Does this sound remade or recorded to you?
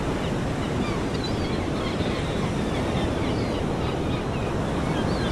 recorded